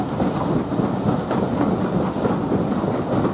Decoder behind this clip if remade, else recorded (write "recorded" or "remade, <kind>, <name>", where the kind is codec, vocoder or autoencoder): recorded